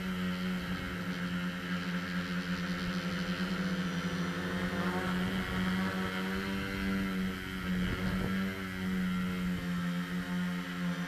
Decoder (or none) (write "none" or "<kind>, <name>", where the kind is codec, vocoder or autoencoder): none